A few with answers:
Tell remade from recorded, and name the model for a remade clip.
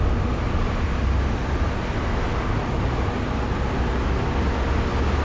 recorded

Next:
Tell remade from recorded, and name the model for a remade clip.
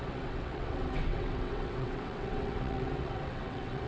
remade, vocoder, WaveNeXt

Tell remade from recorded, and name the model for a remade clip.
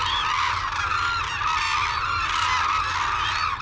recorded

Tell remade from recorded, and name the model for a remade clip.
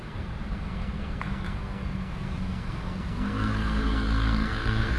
remade, codec, SNAC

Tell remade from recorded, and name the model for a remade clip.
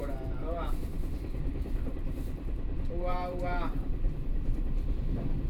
remade, vocoder, BigVGAN v2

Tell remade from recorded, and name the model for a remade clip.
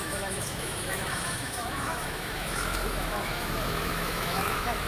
remade, autoencoder, DAC-VAE